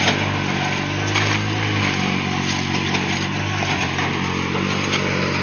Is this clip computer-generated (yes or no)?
no